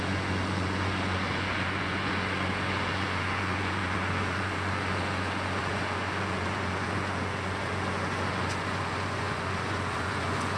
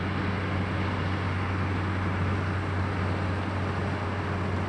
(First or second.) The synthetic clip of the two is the first